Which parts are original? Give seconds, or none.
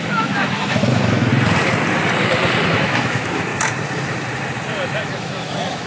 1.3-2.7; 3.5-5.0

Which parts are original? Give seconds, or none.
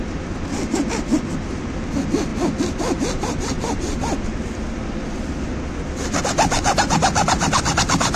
0.0-8.2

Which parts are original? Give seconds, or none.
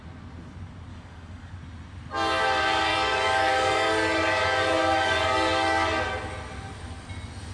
0.0-0.9; 1.5-2.9; 6.0-7.5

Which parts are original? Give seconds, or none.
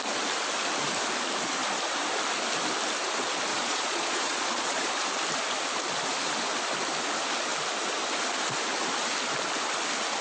0.0-3.5; 4.9-10.2